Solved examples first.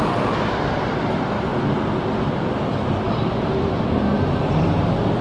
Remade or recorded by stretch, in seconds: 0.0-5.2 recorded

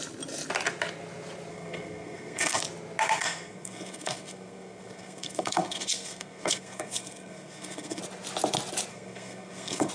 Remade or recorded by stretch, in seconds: 0.0-1.5 recorded; 1.5-2.6 remade; 2.6-3.2 recorded; 3.2-8.0 remade; 8.0-8.9 recorded; 8.9-9.9 remade

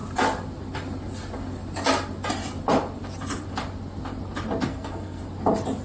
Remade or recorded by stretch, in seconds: 0.0-4.7 recorded; 4.7-5.2 remade; 5.2-5.8 recorded

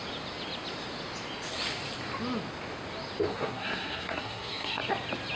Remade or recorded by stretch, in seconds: 0.0-3.3 recorded; 3.3-4.8 remade; 4.8-5.4 recorded

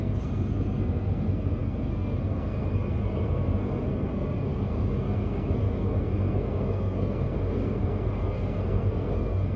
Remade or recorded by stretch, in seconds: 0.0-9.6 remade

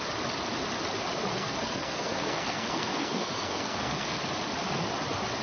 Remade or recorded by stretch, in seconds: 0.0-1.3 recorded; 1.3-4.2 remade; 4.2-5.4 recorded

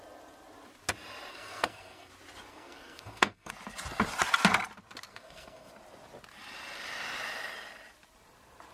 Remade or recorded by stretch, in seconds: 0.0-1.3 recorded; 1.3-2.1 remade; 2.1-2.5 recorded; 2.5-3.5 remade; 3.5-5.1 recorded; 5.1-5.7 remade; 5.7-8.7 recorded

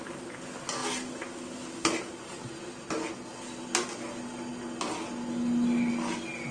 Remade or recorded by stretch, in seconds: 0.0-6.5 recorded